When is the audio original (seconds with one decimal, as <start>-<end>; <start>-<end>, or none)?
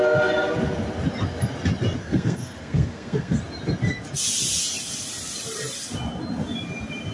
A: 0.0-2.0; 3.4-7.1